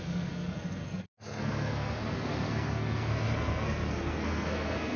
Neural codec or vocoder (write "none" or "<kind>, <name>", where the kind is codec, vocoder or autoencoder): codec, SNAC